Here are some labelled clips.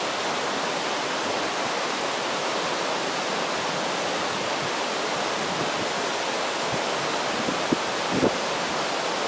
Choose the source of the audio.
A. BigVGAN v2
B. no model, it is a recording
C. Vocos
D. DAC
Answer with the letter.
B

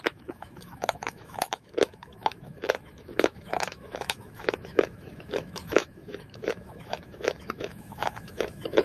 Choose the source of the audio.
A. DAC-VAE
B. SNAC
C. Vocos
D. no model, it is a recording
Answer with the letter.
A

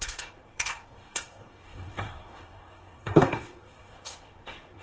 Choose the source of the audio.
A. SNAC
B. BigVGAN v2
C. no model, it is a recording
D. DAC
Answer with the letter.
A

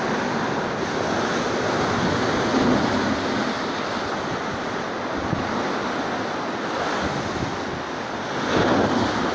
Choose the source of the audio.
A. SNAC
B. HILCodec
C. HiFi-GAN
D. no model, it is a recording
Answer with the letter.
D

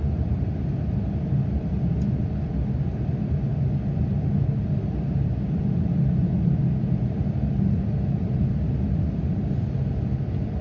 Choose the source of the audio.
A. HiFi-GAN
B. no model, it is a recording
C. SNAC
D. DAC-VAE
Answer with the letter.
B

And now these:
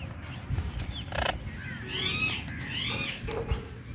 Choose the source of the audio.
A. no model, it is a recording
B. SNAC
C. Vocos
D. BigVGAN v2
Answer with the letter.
A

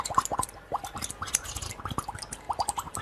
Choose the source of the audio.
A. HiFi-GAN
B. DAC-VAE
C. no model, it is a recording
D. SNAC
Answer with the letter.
C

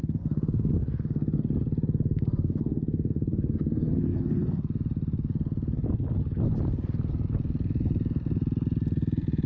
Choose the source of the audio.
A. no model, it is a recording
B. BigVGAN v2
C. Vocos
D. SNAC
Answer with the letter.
A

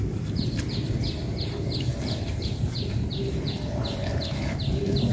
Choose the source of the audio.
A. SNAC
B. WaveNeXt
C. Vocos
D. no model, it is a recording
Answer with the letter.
D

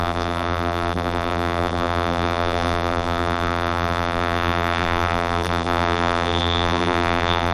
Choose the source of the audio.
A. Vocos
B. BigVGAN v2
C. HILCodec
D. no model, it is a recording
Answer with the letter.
B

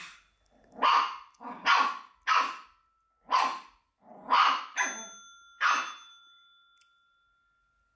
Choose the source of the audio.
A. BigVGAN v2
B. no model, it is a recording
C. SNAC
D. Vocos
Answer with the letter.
B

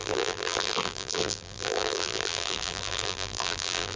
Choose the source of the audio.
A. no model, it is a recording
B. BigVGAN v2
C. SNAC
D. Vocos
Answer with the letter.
B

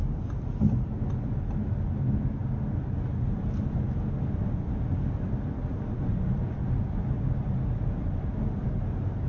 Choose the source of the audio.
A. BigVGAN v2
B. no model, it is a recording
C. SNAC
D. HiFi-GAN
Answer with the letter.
B